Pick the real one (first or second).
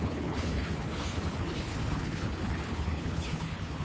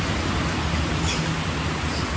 second